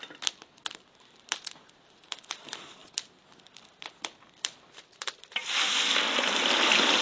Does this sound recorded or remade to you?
recorded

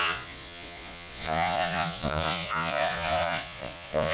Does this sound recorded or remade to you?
remade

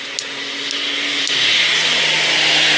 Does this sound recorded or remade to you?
recorded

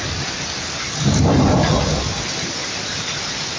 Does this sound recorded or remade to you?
recorded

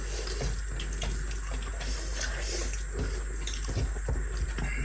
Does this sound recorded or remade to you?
recorded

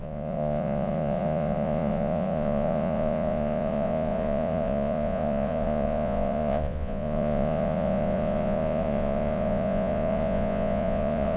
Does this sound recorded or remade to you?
remade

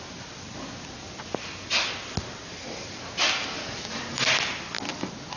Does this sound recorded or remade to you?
recorded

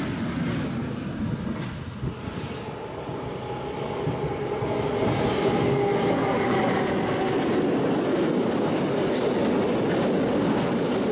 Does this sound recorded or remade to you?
recorded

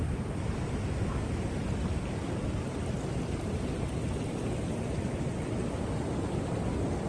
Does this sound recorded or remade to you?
recorded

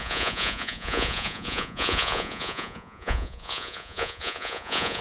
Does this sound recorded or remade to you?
remade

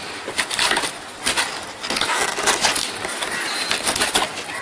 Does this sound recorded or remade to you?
recorded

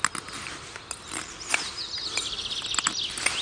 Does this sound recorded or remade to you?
recorded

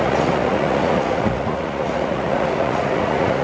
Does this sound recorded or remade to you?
remade